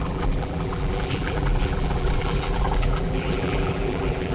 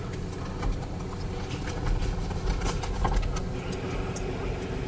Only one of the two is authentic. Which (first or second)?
second